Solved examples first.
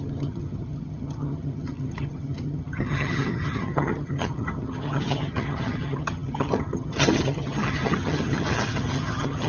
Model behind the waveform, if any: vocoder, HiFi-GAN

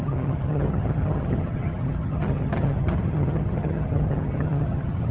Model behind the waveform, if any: vocoder, HiFi-GAN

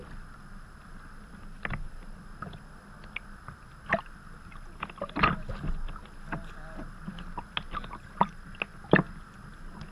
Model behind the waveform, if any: none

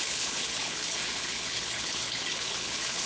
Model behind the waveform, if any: codec, HILCodec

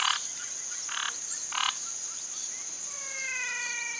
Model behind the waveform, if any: none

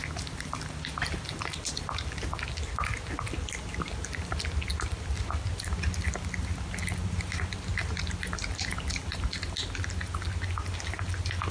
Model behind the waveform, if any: none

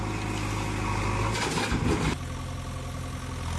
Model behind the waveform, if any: none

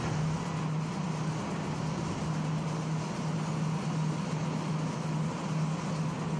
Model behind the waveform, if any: none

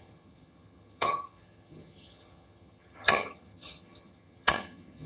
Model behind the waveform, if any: vocoder, HiFi-GAN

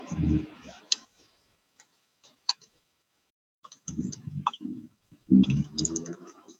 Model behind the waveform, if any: autoencoder, DAC-VAE